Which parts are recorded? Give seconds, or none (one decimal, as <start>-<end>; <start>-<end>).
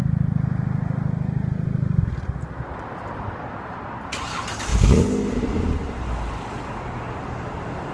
0.0-7.9